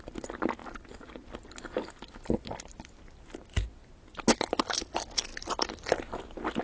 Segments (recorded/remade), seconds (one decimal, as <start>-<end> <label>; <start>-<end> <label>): 0.0-6.6 recorded